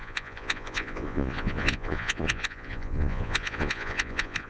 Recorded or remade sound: remade